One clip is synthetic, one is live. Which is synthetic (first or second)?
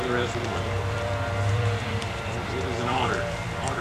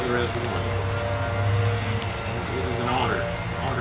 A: first